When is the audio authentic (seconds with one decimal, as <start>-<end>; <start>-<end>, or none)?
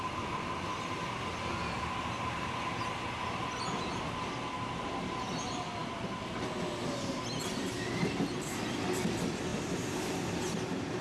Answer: 0.0-11.0